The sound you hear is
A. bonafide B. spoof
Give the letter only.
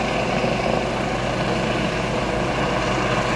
A